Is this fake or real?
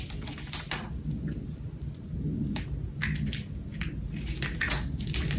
real